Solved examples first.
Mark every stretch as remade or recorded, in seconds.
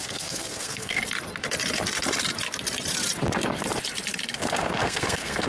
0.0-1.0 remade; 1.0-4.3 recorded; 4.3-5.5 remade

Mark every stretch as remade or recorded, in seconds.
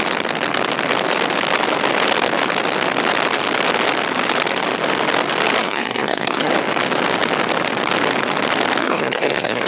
0.0-5.6 recorded; 5.6-6.5 remade; 6.5-8.8 recorded; 8.8-9.7 remade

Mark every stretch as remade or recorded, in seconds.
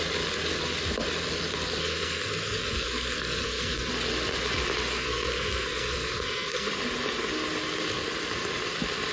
0.0-1.8 recorded; 1.8-3.9 remade; 3.9-5.0 recorded; 5.0-6.7 remade; 6.7-9.1 recorded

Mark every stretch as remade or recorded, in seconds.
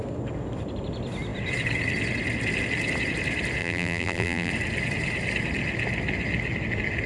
0.0-3.6 recorded; 3.6-4.5 remade; 4.5-7.1 recorded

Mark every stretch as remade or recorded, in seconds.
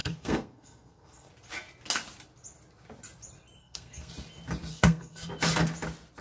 0.0-1.3 remade; 1.3-3.6 recorded; 3.6-4.1 remade; 4.1-4.7 recorded; 4.7-5.3 remade; 5.3-6.2 recorded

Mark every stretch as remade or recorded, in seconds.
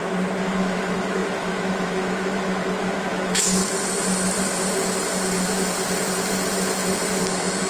0.0-0.6 recorded; 0.6-3.6 remade; 3.6-7.2 recorded; 7.2-7.7 remade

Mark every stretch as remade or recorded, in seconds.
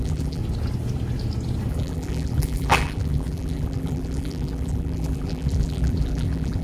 0.0-0.4 remade; 0.4-1.7 recorded; 1.7-6.6 remade